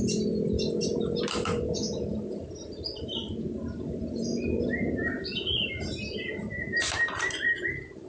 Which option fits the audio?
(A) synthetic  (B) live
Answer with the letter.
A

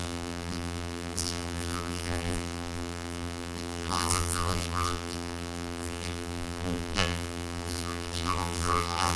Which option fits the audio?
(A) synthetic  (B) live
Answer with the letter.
A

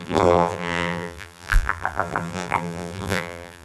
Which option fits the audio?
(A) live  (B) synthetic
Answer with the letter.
B